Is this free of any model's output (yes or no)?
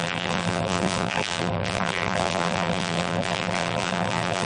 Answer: no